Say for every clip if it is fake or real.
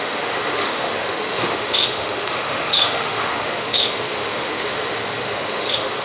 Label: fake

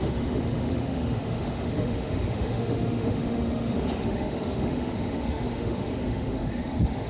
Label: fake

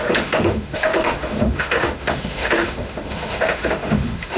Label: fake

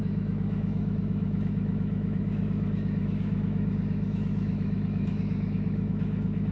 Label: fake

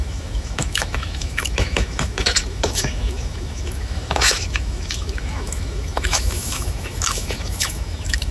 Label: fake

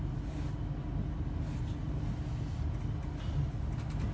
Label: real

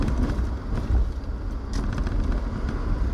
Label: real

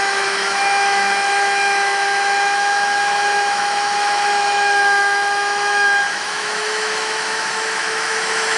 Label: fake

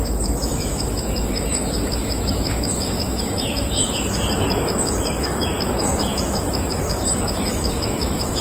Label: fake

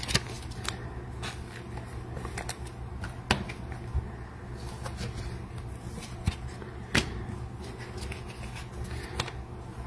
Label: real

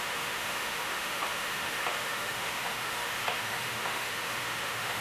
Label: fake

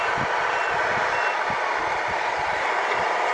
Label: real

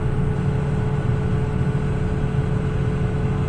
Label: real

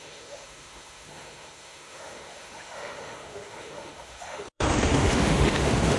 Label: fake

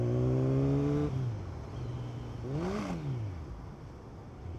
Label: real